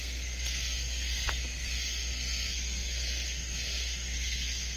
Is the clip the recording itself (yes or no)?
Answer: no